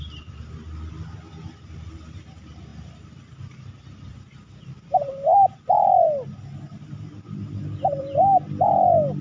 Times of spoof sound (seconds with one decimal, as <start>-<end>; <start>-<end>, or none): none